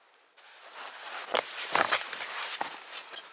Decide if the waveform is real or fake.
real